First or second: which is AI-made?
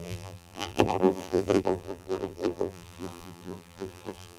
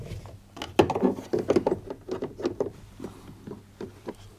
first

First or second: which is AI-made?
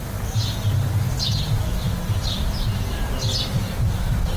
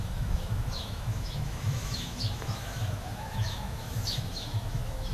second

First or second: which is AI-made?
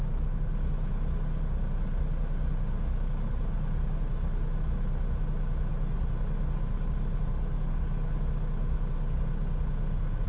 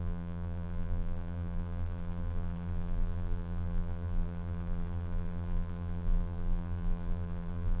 second